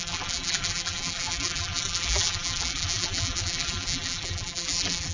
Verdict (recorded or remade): remade